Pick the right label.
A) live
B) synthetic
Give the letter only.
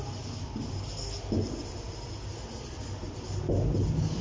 A